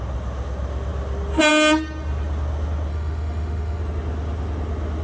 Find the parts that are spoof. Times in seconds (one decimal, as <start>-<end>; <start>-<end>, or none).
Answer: 2.9-3.8